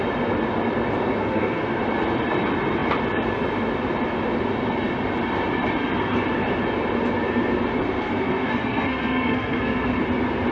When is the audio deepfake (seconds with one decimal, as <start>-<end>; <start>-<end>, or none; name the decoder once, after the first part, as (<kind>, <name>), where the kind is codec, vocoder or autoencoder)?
1.2-1.8 (codec, SNAC); 7.8-10.0